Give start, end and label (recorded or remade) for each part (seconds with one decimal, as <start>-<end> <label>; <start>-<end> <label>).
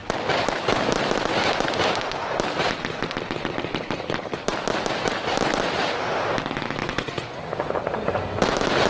0.0-6.8 recorded; 6.8-7.7 remade; 7.7-8.9 recorded